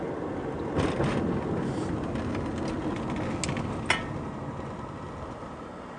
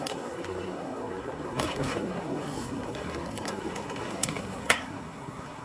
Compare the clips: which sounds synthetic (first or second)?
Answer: second